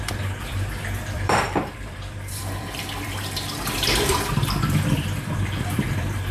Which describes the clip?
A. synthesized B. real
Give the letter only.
A